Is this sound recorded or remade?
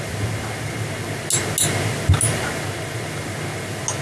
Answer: recorded